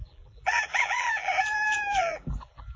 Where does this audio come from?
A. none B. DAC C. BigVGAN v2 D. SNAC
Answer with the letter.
C